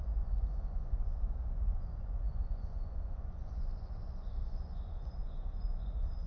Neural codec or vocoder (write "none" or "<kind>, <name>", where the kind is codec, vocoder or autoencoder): vocoder, Vocos